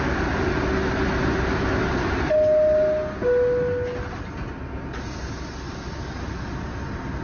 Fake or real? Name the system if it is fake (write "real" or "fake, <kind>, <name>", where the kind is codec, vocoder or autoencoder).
real